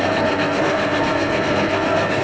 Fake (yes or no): yes